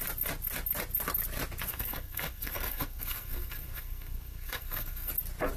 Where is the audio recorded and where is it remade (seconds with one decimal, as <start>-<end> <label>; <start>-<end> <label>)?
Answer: 0.0-1.7 recorded; 1.7-5.1 remade; 5.1-5.6 recorded